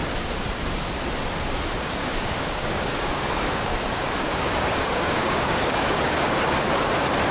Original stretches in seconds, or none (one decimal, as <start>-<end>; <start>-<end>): 0.0-2.0; 6.0-7.3